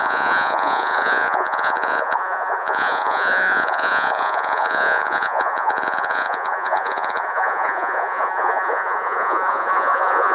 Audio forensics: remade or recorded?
remade